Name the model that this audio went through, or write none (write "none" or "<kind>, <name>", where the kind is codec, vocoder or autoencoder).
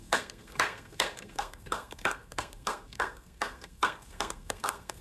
codec, SNAC